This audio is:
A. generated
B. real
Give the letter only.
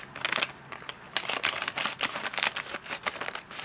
B